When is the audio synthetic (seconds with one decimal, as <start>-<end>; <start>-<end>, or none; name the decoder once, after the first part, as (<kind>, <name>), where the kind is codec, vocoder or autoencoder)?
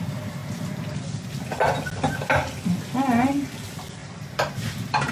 4.0-5.1 (vocoder, BigVGAN v2)